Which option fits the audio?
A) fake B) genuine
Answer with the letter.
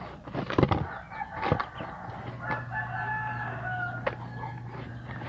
B